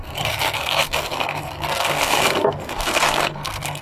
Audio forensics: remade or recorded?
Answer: remade